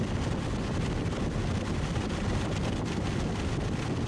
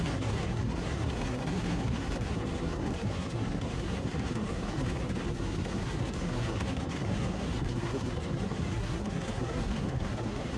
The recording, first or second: first